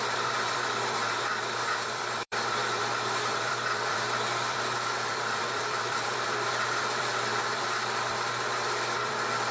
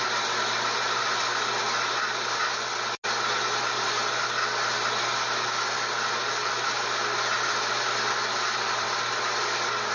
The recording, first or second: second